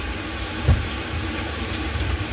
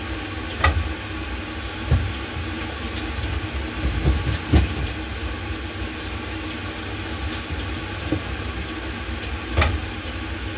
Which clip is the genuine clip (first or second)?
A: second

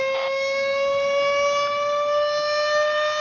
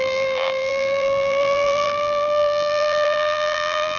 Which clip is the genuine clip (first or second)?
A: first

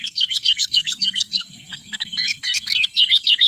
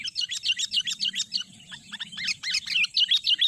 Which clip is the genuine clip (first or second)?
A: second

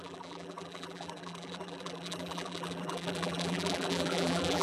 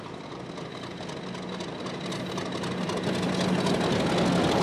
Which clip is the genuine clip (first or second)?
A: second